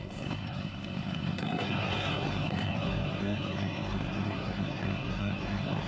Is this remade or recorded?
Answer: remade